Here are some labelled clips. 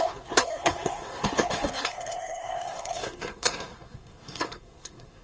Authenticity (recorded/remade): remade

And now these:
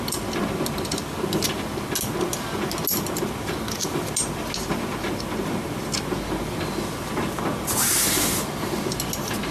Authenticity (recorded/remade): recorded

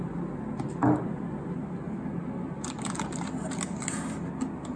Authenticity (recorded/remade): recorded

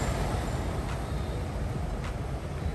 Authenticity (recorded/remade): recorded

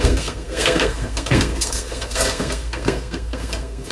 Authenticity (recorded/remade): remade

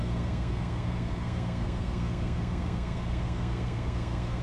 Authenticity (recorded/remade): remade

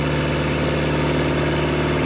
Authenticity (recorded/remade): recorded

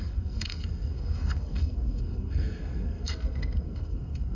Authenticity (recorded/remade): remade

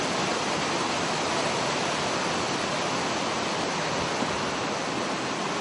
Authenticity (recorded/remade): recorded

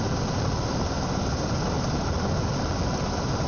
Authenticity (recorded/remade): recorded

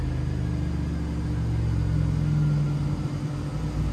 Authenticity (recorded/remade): recorded